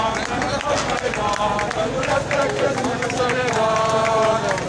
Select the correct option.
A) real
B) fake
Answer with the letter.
A